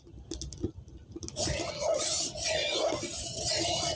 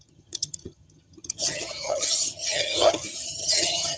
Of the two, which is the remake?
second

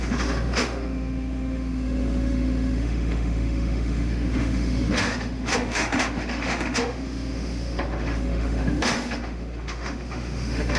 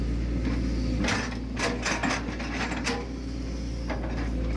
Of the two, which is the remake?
first